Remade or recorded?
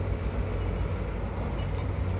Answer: recorded